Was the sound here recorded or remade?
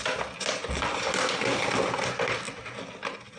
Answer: recorded